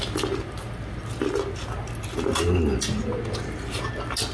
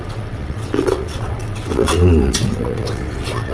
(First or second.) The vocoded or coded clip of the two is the second